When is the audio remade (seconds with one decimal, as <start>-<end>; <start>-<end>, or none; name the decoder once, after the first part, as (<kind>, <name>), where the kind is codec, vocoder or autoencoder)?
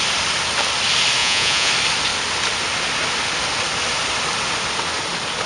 1.2-1.7 (vocoder, Vocos)